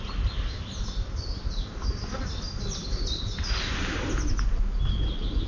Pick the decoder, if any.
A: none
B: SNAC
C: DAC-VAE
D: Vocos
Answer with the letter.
A